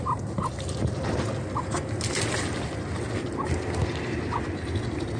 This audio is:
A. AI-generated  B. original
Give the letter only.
B